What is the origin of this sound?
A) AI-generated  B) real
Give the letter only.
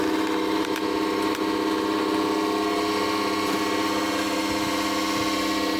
B